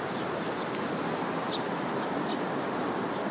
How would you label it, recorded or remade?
remade